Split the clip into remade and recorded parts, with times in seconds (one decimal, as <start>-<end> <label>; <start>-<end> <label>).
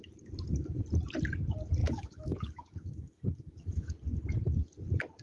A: 0.0-1.8 recorded; 1.8-3.9 remade; 3.9-5.2 recorded